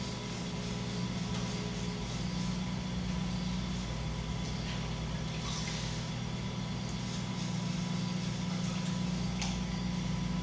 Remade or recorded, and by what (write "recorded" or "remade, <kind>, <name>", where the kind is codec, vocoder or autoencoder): recorded